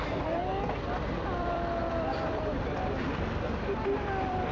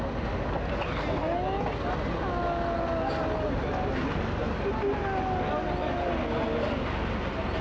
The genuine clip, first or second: second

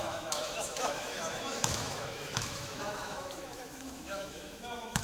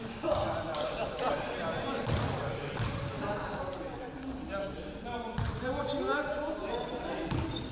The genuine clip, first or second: second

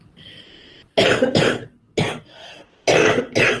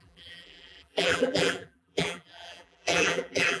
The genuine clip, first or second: first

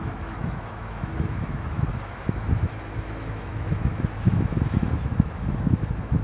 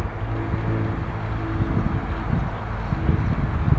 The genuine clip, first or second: second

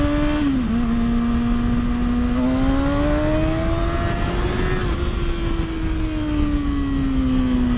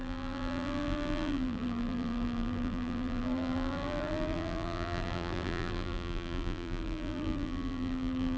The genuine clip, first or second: first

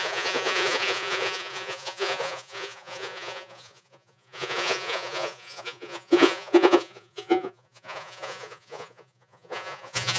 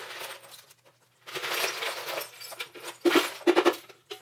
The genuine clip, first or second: second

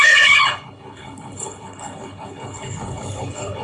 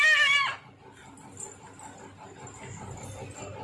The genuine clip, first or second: second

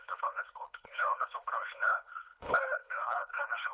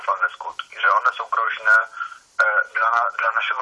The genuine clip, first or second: second